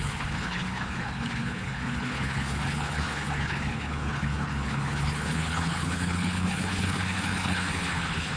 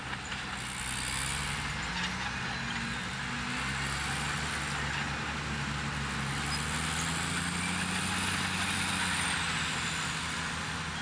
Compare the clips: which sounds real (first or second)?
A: second